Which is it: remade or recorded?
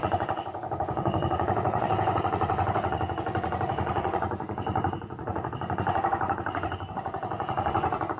remade